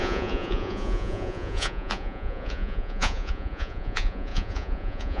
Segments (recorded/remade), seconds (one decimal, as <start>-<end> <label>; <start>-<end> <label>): 0.0-5.2 remade